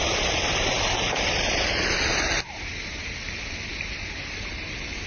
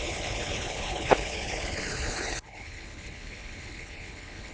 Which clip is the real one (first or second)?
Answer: first